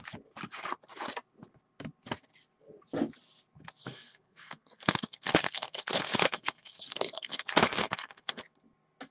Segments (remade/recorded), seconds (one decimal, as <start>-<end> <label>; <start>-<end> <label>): 0.0-3.8 recorded; 3.8-8.4 remade; 8.4-9.1 recorded